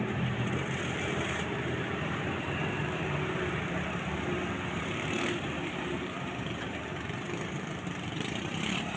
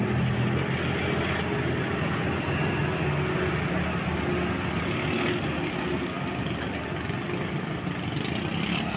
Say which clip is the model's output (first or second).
first